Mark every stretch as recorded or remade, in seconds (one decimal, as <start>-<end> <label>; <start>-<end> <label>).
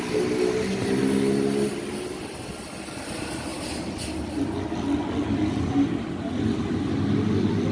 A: 0.0-7.7 recorded